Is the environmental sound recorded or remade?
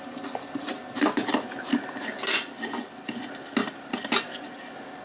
recorded